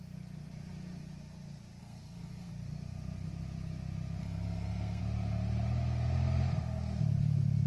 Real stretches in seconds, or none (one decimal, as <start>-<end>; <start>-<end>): 0.0-1.8; 2.5-4.2; 5.0-7.7